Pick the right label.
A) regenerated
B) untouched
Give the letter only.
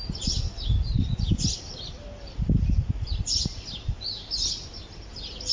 B